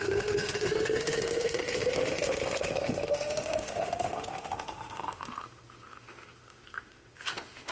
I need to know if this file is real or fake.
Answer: fake